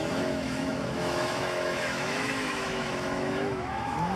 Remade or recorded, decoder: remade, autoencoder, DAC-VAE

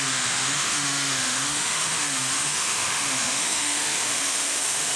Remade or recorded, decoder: remade, autoencoder, DAC-VAE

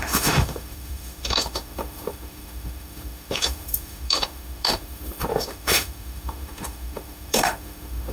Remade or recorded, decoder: remade, autoencoder, DAC-VAE